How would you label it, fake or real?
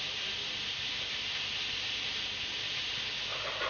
real